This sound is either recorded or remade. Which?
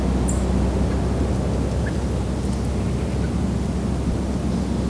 recorded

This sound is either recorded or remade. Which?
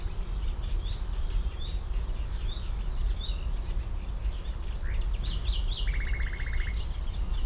recorded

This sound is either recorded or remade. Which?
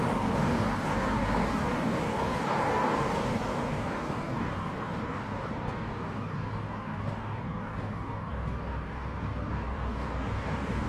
remade